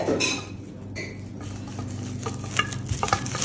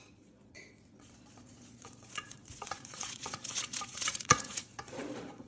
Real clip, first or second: first